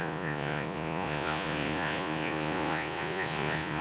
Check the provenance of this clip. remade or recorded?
remade